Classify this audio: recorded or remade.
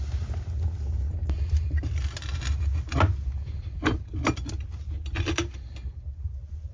recorded